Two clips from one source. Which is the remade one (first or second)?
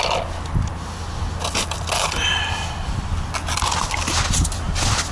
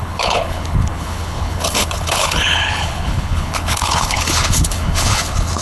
second